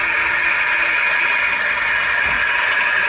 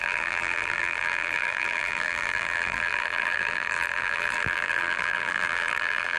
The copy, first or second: second